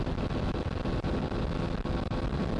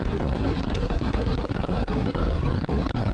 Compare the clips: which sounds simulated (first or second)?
second